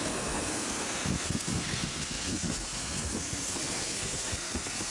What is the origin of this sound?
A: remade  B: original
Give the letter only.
A